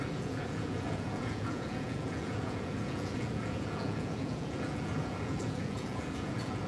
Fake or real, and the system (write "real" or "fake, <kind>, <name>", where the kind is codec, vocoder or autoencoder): fake, vocoder, Vocos